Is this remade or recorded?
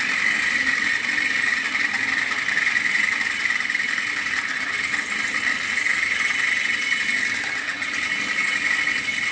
recorded